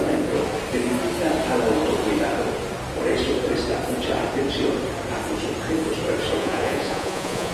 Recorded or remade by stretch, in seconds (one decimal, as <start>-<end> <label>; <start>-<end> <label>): 0.0-6.4 recorded; 6.4-7.5 remade